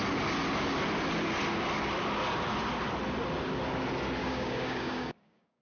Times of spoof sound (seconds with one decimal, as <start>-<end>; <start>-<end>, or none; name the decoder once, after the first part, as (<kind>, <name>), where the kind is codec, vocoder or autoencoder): 4.2-5.6 (codec, DAC)